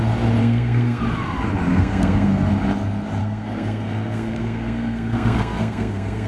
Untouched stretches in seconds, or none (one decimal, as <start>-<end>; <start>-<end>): 0.0-0.4; 1.0-1.7; 2.5-3.2